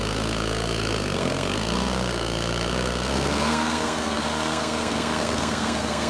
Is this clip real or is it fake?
fake